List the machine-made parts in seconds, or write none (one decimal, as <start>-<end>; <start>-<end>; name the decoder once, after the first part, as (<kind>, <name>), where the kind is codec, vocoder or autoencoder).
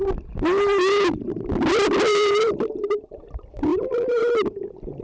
1.7-3.0 (vocoder, BigVGAN v2); 3.7-4.2